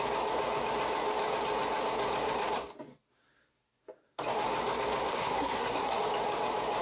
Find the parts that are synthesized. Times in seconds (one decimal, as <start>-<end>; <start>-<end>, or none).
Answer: 5.1-6.0